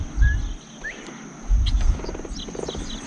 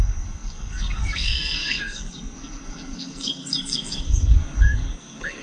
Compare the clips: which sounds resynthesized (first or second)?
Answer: second